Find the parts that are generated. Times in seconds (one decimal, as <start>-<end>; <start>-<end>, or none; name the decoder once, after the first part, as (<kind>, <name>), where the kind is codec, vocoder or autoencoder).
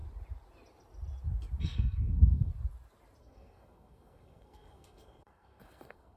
1.6-2.5 (codec, SNAC); 3.2-6.2